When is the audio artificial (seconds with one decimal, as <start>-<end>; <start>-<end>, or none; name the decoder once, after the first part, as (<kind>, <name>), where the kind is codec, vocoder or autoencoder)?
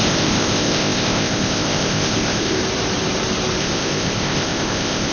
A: 0.0-2.6 (codec, ZipCodec); 3.6-5.1